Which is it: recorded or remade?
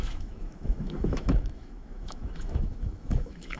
remade